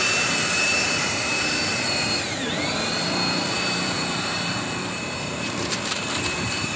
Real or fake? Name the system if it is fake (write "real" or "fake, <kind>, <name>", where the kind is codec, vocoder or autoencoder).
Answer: fake, vocoder, BigVGAN v2